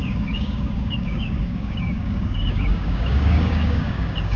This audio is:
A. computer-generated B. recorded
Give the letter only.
A